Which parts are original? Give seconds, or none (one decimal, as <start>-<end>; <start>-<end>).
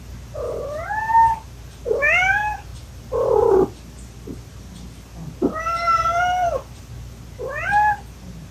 0.0-8.5